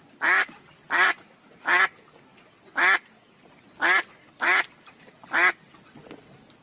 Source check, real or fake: real